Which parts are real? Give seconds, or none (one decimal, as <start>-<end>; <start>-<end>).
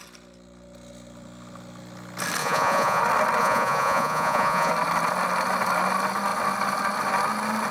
0.0-2.4; 3.0-3.4; 4.7-7.7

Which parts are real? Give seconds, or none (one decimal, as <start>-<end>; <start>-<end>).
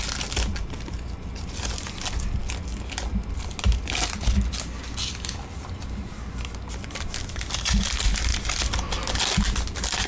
0.0-10.1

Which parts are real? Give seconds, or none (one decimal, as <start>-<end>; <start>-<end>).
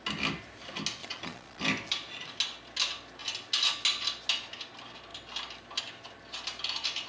0.0-1.0; 1.6-7.1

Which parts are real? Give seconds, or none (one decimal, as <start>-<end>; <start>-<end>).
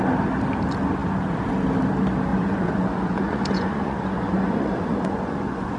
0.0-2.3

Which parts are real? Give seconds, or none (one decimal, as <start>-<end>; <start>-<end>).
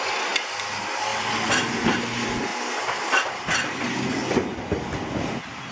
0.0-5.7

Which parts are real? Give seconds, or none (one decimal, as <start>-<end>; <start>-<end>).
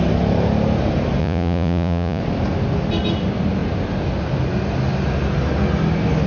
0.0-1.2; 2.2-6.3